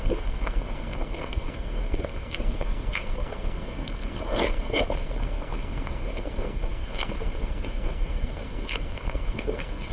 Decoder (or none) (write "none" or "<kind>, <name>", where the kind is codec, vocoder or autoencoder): codec, SNAC